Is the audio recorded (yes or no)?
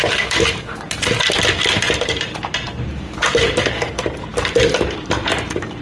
yes